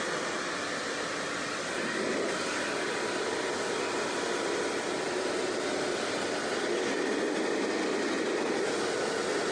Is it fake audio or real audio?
real